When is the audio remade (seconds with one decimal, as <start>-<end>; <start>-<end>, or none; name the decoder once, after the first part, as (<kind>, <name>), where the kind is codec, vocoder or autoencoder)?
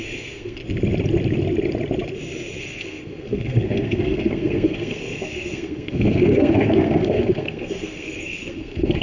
0.0-0.6 (codec, SNAC); 2.6-9.0